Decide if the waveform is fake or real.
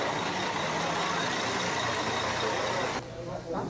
real